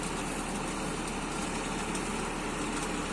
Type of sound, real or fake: real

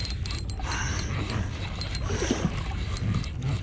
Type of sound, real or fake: real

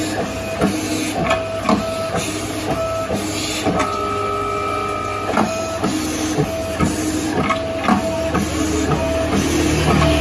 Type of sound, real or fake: real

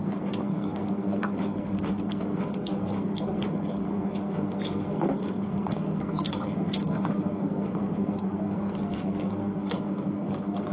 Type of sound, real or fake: fake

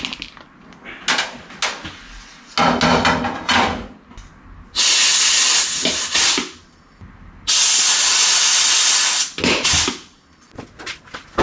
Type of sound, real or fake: real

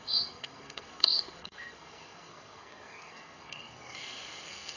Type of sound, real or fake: fake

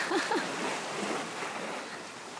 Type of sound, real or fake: real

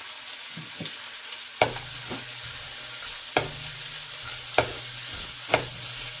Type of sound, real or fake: real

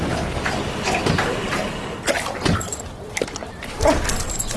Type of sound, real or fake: real